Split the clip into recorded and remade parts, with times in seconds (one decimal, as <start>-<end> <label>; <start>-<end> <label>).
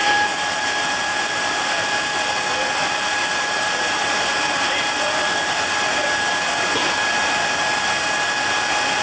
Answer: 0.0-0.6 remade; 0.6-1.1 recorded; 1.1-1.7 remade; 1.7-3.2 recorded; 3.2-8.3 remade; 8.3-9.0 recorded